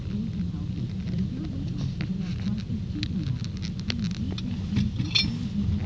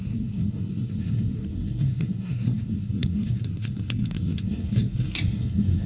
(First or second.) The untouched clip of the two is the first